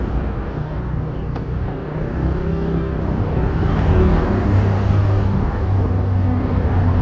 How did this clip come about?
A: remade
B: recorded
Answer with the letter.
A